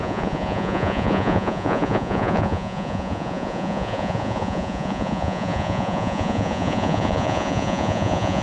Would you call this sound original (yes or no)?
no